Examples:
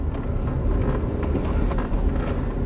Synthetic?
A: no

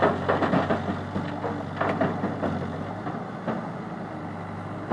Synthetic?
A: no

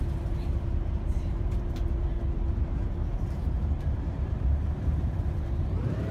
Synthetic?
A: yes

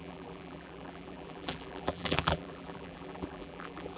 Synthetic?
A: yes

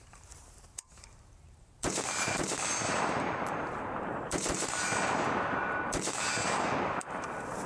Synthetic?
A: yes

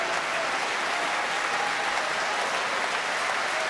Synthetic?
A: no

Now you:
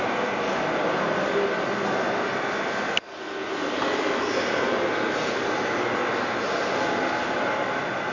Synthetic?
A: no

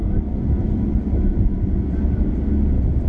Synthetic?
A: yes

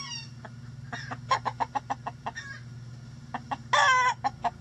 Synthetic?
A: no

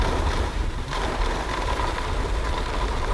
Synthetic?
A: no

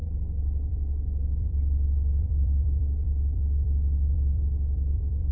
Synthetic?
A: yes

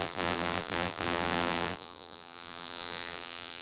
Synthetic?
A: yes